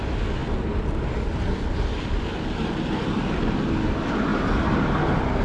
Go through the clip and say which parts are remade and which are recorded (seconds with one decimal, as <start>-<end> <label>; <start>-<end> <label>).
0.0-5.4 recorded